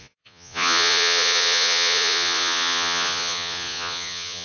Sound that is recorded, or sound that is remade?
remade